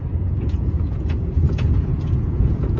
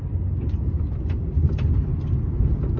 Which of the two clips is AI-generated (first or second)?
first